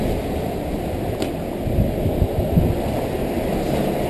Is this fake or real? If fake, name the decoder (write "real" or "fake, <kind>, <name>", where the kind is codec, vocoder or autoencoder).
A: real